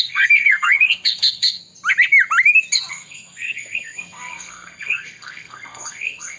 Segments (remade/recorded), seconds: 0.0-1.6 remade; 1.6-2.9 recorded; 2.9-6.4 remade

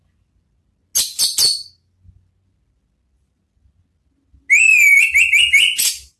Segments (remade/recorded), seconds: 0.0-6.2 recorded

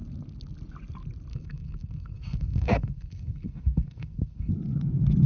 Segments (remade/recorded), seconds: 0.0-1.3 recorded; 1.3-4.5 remade; 4.5-5.3 recorded